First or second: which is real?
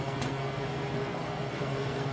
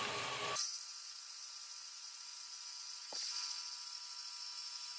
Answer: second